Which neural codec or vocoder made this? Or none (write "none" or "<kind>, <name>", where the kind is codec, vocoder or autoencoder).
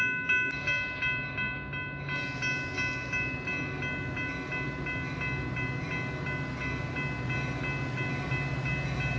none